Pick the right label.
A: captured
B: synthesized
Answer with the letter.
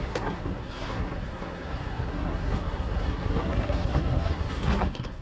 B